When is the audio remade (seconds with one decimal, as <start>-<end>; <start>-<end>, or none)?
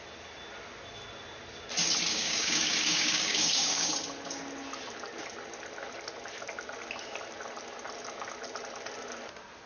2.1-3.9